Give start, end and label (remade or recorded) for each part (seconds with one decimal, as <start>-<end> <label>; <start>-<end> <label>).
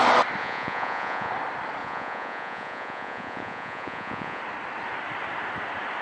0.0-0.4 recorded; 0.4-1.3 remade; 1.3-1.8 recorded; 1.8-4.4 remade; 4.4-6.0 recorded